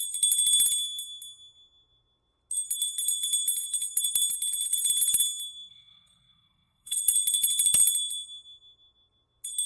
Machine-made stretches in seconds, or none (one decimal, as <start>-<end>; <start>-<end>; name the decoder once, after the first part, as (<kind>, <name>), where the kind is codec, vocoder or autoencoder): 5.7-7.0 (codec, SNAC)